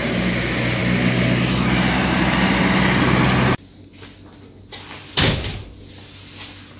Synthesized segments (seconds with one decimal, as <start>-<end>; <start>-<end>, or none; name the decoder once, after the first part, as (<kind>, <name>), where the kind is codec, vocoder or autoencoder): none